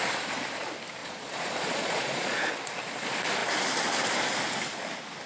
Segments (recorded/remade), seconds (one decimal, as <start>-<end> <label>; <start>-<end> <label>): 0.0-1.0 recorded; 1.0-2.5 remade; 2.5-5.3 recorded